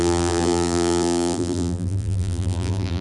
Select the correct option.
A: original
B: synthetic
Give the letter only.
B